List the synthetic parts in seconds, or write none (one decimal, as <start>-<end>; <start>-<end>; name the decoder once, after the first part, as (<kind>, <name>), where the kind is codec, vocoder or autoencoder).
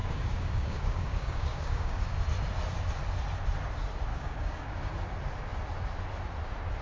0.0-2.0 (codec, DAC); 4.1-4.9